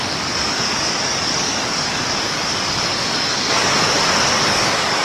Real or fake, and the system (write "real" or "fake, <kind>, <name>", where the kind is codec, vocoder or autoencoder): fake, codec, DAC